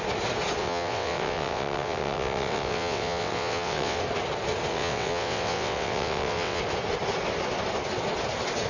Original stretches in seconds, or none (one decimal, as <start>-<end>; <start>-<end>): 0.0-0.6; 4.0-4.7; 6.6-8.7